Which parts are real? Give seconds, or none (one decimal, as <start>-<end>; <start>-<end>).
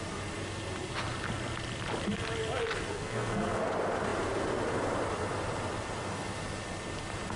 0.0-2.9; 3.6-7.4